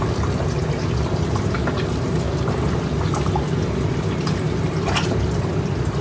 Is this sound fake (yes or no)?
no